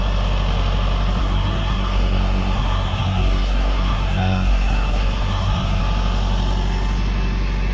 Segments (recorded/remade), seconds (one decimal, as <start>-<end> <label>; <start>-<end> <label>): 0.0-1.2 recorded; 1.2-5.8 remade; 5.8-7.7 recorded